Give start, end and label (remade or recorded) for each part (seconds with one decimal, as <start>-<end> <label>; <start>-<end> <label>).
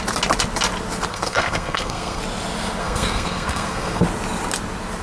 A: 0.0-1.1 recorded; 1.1-2.2 remade; 2.2-2.8 recorded; 2.8-4.0 remade; 4.0-5.0 recorded